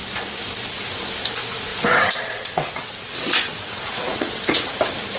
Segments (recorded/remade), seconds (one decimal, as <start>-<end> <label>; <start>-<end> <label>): 0.0-1.7 recorded; 1.7-4.8 remade; 4.8-5.2 recorded